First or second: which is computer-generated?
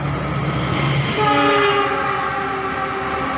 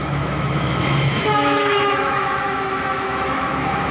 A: second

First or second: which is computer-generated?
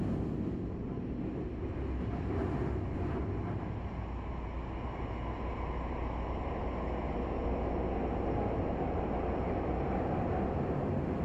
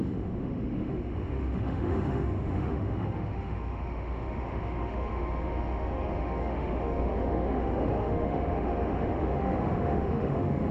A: second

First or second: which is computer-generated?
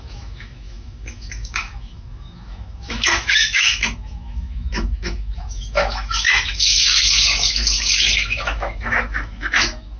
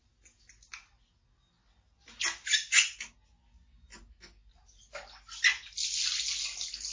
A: first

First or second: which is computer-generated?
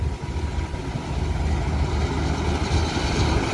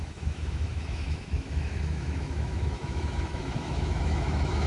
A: second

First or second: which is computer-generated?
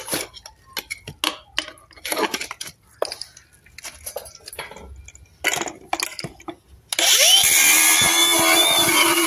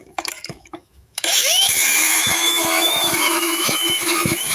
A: second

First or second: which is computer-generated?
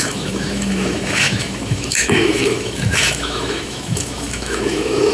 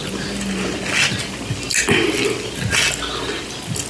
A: first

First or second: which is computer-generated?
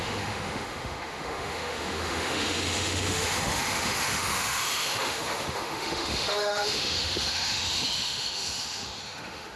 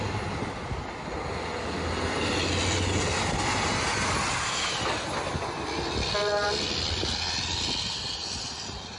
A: first